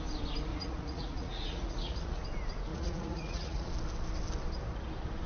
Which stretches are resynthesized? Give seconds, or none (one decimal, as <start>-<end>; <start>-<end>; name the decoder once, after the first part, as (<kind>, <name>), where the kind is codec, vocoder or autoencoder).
0.5-2.2 (vocoder, Vocos); 2.7-3.7